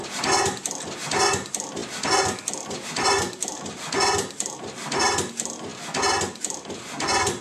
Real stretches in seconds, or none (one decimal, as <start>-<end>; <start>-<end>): 0.0-7.4